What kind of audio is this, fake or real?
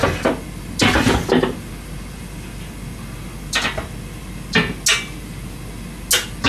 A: real